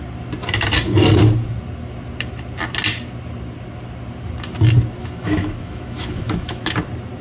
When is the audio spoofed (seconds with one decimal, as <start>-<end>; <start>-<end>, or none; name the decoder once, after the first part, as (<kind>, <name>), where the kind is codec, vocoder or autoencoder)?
5.0-6.6 (autoencoder, DAC-VAE)